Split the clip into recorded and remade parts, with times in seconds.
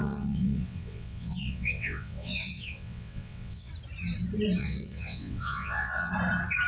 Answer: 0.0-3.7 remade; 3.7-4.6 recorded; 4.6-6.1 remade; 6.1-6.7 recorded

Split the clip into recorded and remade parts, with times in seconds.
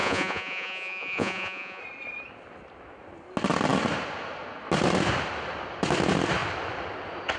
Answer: 0.0-1.8 remade; 1.8-7.4 recorded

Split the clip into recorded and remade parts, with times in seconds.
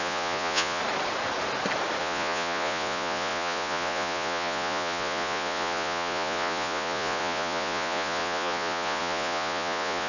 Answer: 0.0-0.8 remade; 0.8-2.0 recorded; 2.0-10.1 remade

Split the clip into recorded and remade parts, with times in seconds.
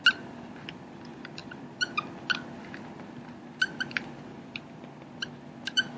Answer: 0.0-6.0 recorded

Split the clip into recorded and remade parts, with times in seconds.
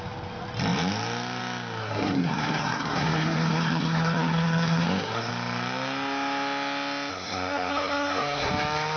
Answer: 0.0-1.8 recorded; 1.8-5.3 remade; 5.3-7.1 recorded; 7.1-8.5 remade; 8.5-9.0 recorded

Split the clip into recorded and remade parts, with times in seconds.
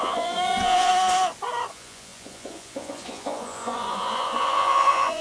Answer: 0.0-0.9 remade; 0.9-1.7 recorded; 1.7-5.2 remade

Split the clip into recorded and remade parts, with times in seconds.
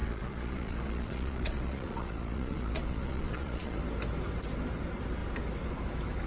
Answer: 0.0-3.8 remade; 3.8-6.3 recorded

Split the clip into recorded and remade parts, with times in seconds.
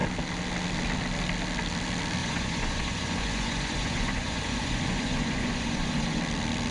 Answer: 0.0-2.2 recorded; 2.2-6.2 remade; 6.2-6.7 recorded